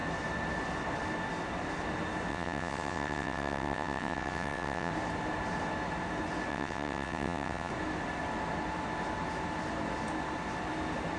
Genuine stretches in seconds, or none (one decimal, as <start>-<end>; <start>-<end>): 0.0-2.3; 4.9-6.5; 7.7-11.2